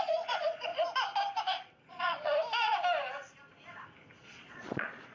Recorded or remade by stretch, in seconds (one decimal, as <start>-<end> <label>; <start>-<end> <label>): 0.0-0.7 remade; 0.7-1.9 recorded; 1.9-2.3 remade; 2.3-4.2 recorded; 4.2-5.1 remade